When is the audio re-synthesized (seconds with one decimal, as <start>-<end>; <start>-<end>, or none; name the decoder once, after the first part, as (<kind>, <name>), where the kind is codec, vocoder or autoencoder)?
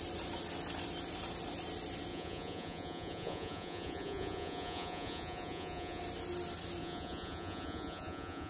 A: 2.1-6.0 (vocoder, Vocos); 6.8-8.5